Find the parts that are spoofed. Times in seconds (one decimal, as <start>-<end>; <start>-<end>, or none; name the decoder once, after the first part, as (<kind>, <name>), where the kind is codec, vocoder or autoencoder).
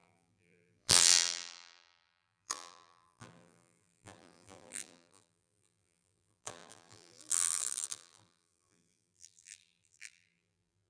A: 0.0-10.9 (vocoder, BigVGAN v2)